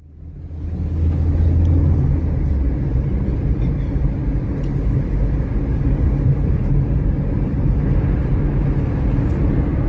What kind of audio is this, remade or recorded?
recorded